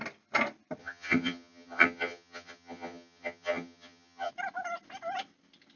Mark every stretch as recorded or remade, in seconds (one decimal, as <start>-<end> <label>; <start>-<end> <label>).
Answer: 0.0-0.8 recorded; 0.8-4.3 remade; 4.3-5.8 recorded